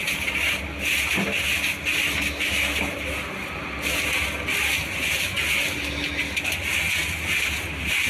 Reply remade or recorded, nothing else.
recorded